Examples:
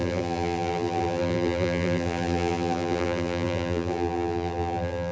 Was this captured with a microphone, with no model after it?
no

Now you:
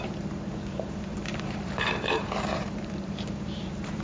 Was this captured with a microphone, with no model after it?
no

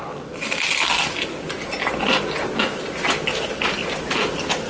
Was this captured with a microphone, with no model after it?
yes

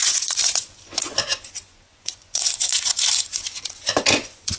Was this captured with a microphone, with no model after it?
no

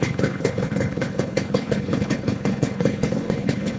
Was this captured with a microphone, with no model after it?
no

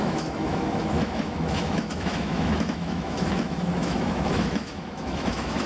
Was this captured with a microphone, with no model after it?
no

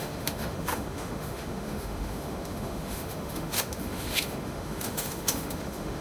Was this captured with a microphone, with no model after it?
no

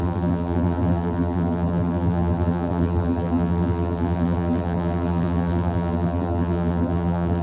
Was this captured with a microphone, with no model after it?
no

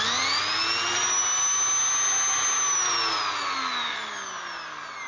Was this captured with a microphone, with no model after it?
yes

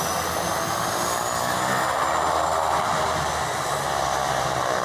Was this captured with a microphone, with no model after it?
yes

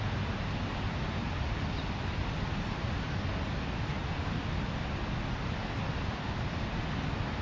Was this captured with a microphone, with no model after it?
yes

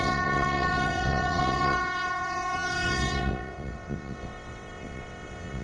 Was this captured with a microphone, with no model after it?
no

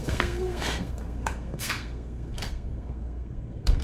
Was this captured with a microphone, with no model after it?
no